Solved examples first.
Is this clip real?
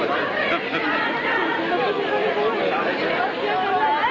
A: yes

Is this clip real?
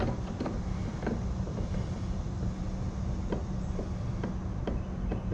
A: yes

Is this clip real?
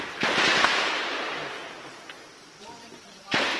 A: no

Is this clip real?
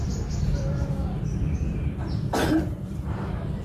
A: no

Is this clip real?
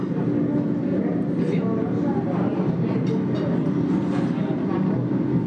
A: yes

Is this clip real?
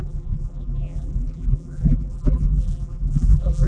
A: no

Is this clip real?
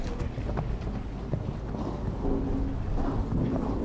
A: yes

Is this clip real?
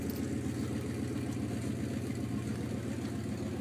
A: yes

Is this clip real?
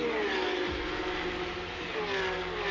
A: yes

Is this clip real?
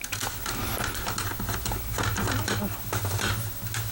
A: yes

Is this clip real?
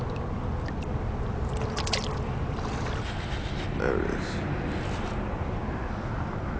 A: yes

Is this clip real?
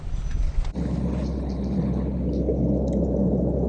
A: yes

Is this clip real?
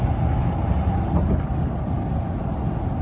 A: yes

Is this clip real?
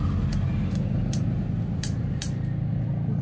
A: yes